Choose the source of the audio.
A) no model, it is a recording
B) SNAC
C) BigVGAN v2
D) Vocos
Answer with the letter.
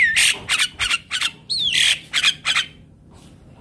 A